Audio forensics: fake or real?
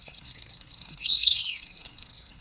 fake